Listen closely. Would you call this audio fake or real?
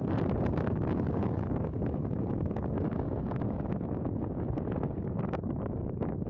fake